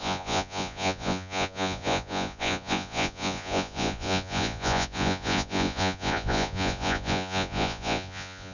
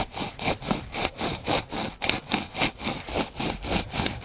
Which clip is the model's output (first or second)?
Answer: first